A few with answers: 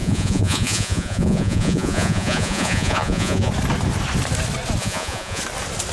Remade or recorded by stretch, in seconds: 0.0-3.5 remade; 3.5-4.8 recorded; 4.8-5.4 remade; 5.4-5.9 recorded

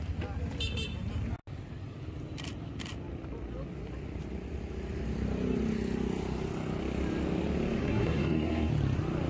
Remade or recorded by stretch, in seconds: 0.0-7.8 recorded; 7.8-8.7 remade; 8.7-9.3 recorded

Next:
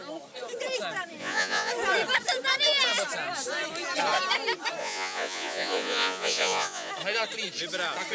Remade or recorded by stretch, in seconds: 0.0-1.2 recorded; 1.2-1.7 remade; 1.7-4.8 recorded; 4.8-6.9 remade; 6.9-8.1 recorded

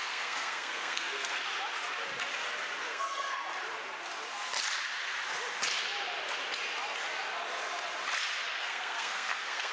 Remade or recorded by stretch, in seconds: 0.0-1.5 remade; 1.5-2.8 recorded; 2.8-3.4 remade; 3.4-8.6 recorded; 8.6-9.7 remade